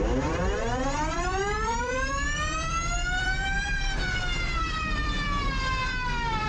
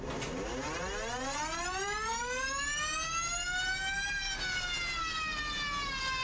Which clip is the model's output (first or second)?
first